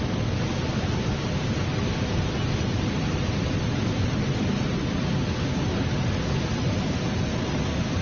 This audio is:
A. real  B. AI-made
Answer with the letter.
A